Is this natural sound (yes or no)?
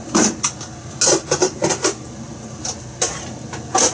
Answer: yes